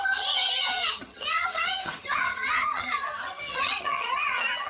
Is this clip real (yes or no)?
no